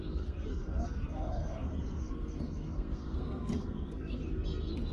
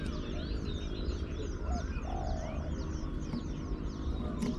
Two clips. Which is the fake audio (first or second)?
first